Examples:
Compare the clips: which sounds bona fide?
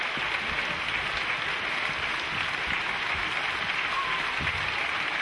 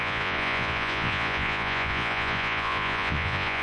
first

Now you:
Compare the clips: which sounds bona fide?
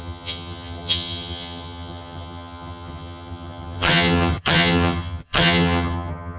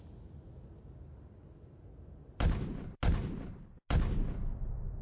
second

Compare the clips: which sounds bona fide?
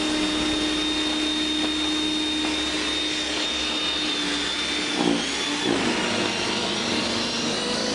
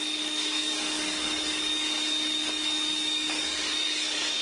first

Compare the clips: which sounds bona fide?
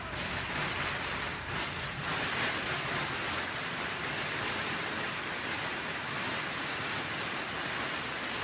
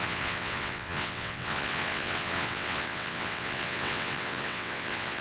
first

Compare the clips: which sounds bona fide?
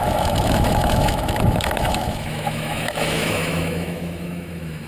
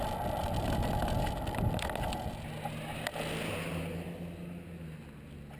second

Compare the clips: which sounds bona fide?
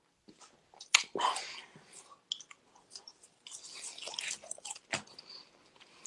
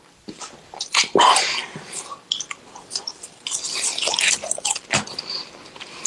first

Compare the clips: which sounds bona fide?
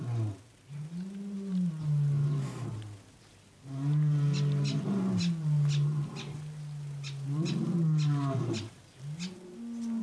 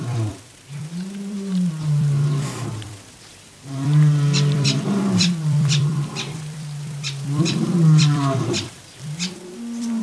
first